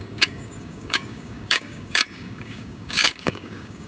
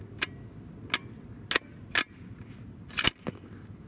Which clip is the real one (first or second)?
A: second